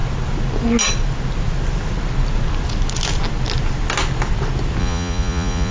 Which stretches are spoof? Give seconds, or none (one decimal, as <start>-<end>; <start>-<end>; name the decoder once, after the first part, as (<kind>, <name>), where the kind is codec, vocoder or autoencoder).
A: 4.8-5.7 (vocoder, Vocos)